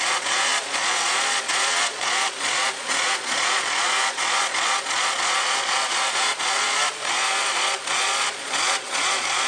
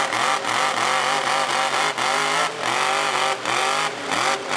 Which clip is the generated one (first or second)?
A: first